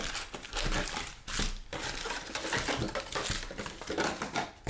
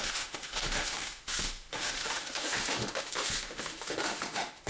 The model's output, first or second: second